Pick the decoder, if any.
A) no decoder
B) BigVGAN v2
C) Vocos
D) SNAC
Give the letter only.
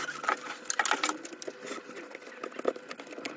A